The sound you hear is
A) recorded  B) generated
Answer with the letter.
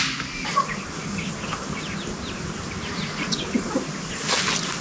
A